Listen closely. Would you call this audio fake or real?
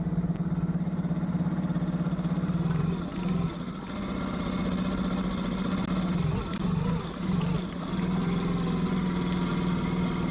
real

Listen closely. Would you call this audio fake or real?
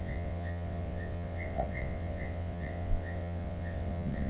fake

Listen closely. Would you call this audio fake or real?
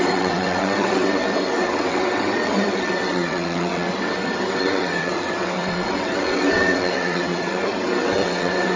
fake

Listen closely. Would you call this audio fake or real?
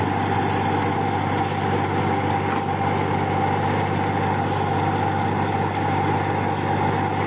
real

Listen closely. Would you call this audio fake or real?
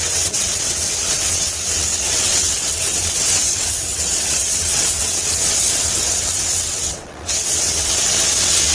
fake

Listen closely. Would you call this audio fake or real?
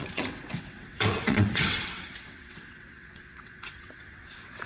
fake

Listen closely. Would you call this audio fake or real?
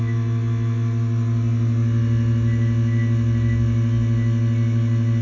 real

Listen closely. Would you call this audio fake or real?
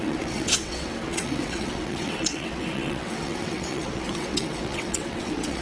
fake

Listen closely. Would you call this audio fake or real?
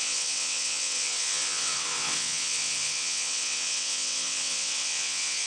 fake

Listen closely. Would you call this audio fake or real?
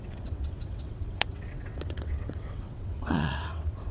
fake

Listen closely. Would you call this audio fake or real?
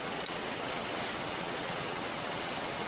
fake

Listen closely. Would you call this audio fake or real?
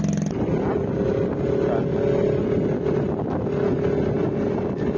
real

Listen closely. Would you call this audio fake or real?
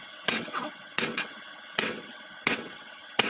fake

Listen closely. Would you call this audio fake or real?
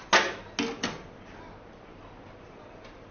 real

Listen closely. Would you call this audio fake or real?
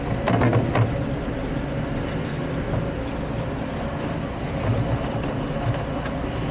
real